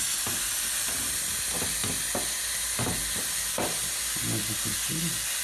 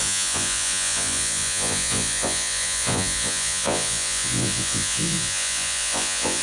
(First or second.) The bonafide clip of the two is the first